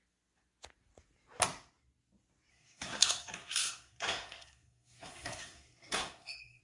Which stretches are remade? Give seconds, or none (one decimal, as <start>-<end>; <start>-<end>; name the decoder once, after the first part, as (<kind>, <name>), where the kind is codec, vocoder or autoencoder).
2.5-6.6 (codec, SNAC)